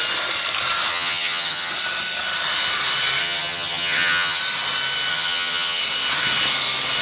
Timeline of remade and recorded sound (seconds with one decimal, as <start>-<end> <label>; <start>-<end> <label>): 0.0-0.9 recorded; 0.9-1.7 remade; 1.7-3.2 recorded; 3.2-4.4 remade; 4.4-5.1 recorded; 5.1-5.8 remade; 5.8-7.0 recorded